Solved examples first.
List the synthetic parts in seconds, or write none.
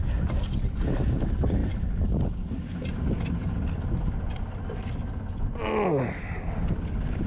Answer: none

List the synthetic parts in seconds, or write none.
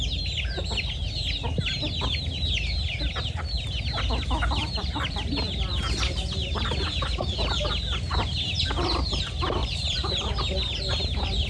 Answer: 4.6-5.3 (vocoder, BigVGAN v2); 9.6-10.3